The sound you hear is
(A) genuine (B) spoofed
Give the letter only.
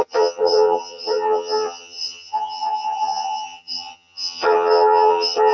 B